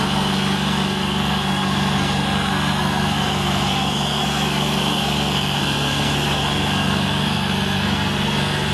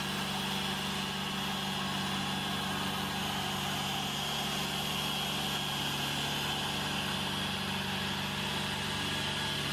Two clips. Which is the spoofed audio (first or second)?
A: first